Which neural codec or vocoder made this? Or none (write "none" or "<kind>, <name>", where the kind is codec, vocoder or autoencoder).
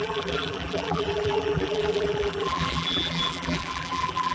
vocoder, BigVGAN v2